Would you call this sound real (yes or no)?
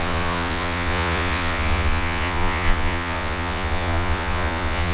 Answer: no